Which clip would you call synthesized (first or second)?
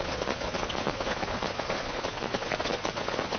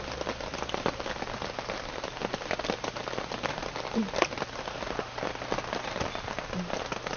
first